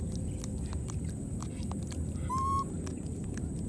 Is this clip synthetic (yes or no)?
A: no